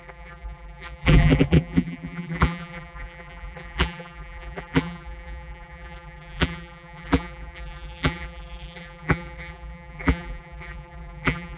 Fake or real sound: fake